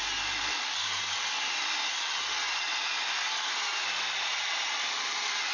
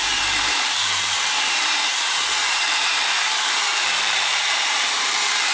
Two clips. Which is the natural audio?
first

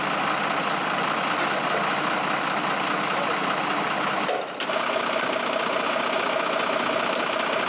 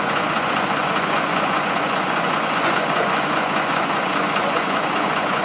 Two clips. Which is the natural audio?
first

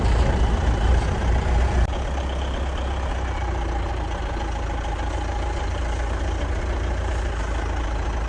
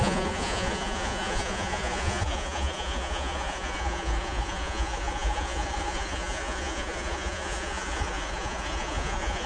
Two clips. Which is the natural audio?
first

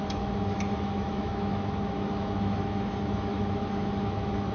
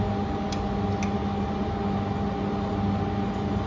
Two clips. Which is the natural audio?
second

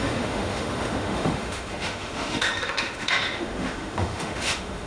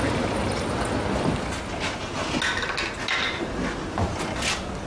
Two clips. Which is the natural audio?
second